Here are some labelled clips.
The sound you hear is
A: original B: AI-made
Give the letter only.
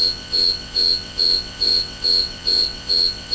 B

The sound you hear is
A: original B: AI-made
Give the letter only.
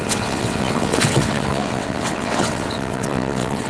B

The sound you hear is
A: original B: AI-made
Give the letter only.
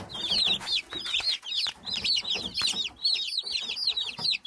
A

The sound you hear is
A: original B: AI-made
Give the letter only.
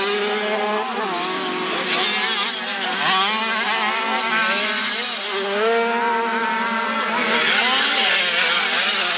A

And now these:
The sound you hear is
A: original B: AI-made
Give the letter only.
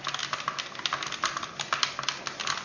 A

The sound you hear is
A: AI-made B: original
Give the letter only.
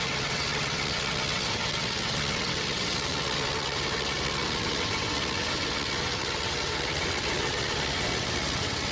A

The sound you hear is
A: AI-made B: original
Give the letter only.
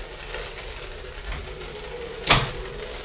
B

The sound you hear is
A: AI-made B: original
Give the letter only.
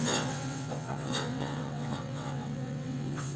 A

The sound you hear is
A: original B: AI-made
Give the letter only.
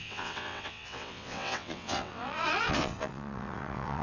B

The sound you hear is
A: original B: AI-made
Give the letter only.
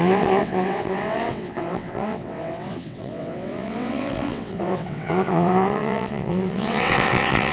B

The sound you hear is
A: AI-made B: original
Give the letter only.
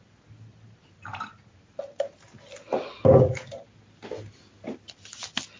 B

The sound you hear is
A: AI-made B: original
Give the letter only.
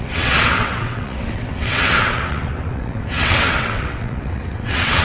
A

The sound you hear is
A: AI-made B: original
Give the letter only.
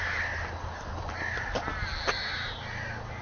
B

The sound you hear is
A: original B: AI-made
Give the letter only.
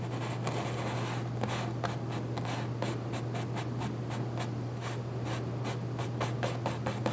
A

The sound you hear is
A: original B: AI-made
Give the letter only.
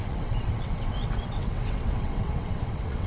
B